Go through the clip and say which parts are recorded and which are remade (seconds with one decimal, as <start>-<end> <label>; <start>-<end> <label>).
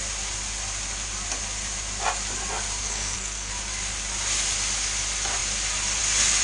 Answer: 0.0-2.8 recorded; 2.8-3.5 remade; 3.5-6.4 recorded